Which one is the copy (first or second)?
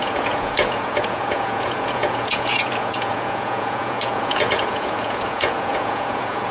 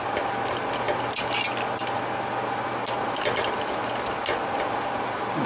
first